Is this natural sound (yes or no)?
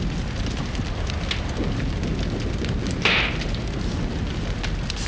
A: yes